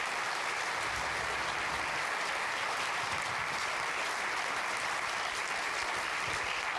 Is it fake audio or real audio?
real